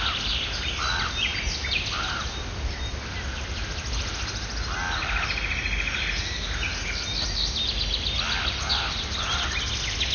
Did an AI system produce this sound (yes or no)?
no